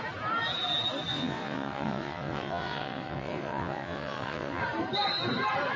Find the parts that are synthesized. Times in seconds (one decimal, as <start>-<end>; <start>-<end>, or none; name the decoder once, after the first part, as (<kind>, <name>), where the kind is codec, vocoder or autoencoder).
1.1-4.6 (vocoder, WaveNeXt)

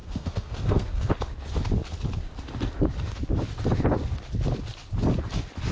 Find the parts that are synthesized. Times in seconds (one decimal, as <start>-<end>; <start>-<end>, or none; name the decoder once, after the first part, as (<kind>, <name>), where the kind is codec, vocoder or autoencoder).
0.0-1.1 (codec, SNAC)

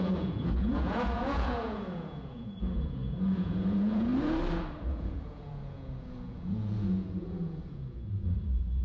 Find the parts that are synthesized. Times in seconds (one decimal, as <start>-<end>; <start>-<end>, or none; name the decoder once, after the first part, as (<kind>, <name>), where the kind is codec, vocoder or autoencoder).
0.0-4.1 (vocoder, Vocos); 4.9-8.8

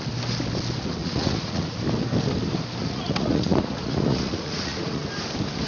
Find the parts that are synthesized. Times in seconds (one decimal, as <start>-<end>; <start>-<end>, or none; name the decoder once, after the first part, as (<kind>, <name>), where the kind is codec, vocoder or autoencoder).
1.0-1.8 (vocoder, Vocos); 2.8-5.0

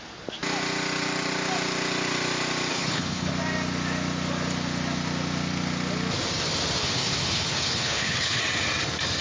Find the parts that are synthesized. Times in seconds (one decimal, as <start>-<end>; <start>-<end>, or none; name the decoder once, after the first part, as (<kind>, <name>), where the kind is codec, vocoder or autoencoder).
2.7-3.3 (codec, HILCodec); 6.8-8.4

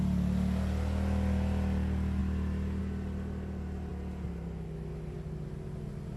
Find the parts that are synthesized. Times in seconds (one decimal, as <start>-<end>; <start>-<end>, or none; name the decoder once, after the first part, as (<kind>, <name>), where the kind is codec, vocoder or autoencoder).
none